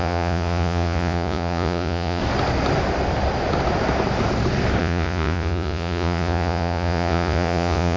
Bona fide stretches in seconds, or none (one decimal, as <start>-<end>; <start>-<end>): 2.2-4.8